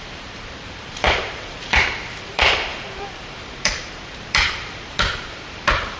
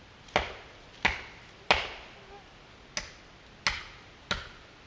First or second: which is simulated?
first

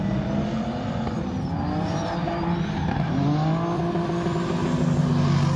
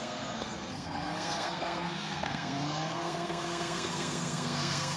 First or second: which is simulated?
second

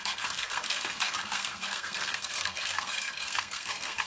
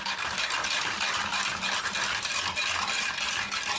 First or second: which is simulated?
first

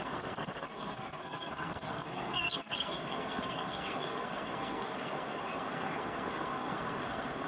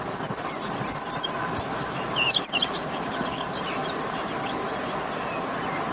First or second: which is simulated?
first